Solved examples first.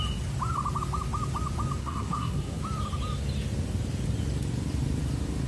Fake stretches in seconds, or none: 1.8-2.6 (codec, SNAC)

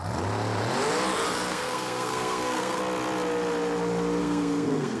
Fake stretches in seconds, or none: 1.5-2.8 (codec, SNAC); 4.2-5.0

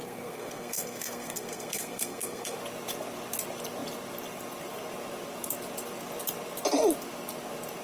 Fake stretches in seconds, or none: 0.0-2.6 (codec, SNAC)

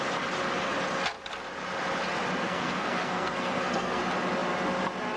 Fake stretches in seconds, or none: 2.4-4.0 (codec, SNAC)

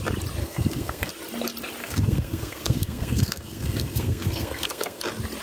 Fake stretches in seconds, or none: 0.4-1.1 (codec, SNAC); 1.8-5.0

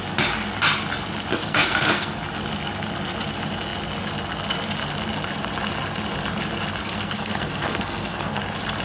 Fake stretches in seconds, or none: 1.3-2.2 (codec, SNAC); 6.8-8.4